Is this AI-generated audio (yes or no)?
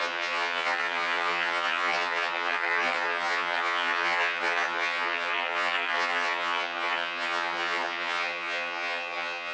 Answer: yes